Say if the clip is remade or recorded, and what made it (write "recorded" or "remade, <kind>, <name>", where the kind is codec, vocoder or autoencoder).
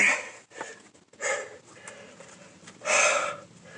recorded